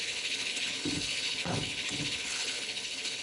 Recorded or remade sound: remade